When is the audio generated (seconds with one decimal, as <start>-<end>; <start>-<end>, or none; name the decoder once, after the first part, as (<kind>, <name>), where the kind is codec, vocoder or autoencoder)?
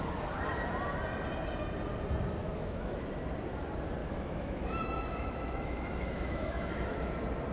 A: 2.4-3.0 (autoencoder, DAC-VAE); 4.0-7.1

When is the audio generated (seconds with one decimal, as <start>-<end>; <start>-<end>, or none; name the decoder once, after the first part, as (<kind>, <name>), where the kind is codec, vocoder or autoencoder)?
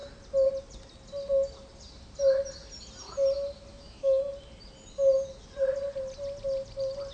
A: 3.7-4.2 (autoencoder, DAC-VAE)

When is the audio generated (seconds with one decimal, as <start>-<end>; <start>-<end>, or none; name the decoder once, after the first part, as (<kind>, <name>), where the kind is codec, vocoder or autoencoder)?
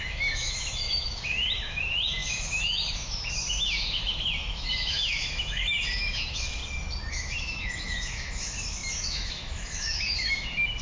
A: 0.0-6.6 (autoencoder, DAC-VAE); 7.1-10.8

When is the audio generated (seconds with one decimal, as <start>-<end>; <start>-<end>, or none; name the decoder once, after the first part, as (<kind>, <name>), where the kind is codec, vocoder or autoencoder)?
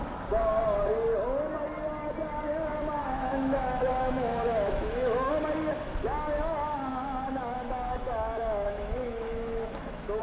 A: 3.0-5.3 (autoencoder, DAC-VAE); 6.9-10.2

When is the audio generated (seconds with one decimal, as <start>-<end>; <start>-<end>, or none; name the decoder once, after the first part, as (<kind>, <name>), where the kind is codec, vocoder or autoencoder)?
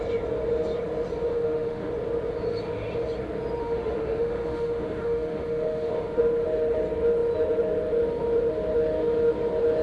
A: 1.3-1.9 (autoencoder, DAC-VAE); 3.6-6.2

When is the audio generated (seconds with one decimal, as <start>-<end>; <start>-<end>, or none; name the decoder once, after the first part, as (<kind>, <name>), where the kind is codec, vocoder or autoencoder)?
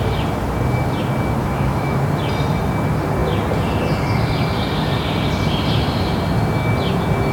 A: 1.4-2.0 (autoencoder, DAC-VAE)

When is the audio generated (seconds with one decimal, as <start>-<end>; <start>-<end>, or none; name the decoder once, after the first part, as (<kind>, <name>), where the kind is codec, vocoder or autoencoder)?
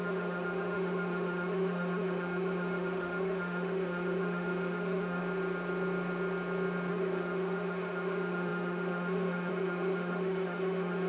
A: 0.0-5.2 (autoencoder, DAC-VAE); 6.9-11.1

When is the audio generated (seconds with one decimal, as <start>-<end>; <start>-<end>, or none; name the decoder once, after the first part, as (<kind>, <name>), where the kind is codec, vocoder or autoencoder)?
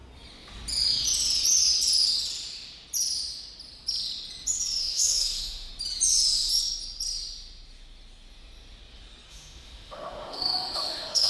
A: 4.8-5.7 (autoencoder, DAC-VAE); 9.3-11.3